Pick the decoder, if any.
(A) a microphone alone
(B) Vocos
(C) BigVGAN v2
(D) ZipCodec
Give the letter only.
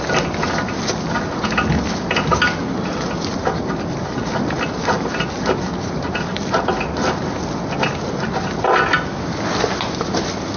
A